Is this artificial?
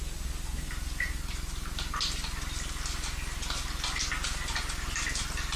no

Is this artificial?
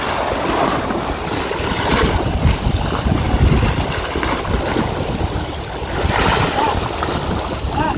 no